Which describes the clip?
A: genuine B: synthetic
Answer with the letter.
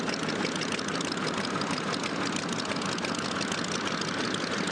A